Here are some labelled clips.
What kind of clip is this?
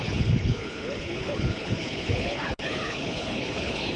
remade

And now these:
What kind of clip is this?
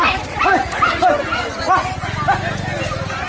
recorded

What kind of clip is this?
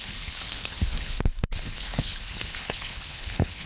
remade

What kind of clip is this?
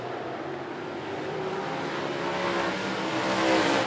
recorded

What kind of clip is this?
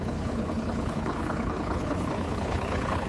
remade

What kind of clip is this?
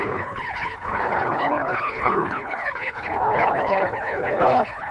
remade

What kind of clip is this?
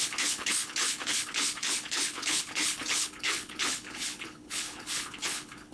remade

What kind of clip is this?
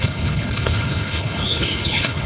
remade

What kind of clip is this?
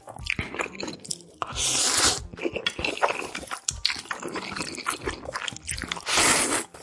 recorded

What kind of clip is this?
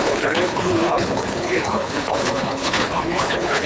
remade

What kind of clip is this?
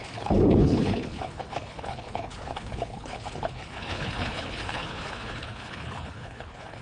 remade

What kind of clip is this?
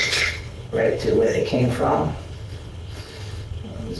remade